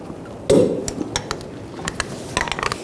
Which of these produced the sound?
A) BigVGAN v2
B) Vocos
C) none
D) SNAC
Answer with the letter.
C